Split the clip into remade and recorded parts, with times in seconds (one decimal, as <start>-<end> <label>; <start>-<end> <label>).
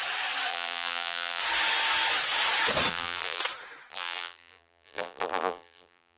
0.0-0.5 recorded; 0.5-1.4 remade; 1.4-2.9 recorded; 2.9-3.4 remade; 3.4-3.9 recorded; 3.9-6.2 remade